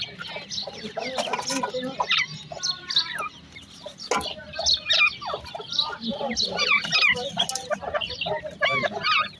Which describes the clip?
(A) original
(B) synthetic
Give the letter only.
A